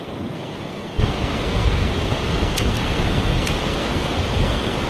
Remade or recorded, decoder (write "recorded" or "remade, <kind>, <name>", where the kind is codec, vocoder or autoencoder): remade, codec, SNAC